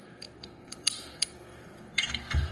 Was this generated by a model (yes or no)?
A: yes